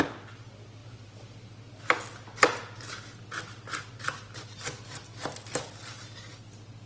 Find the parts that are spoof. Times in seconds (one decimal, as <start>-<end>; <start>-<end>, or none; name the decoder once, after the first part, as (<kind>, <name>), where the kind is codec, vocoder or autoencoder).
none